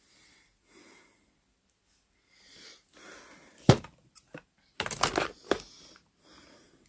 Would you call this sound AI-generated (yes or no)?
no